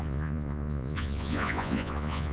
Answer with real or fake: fake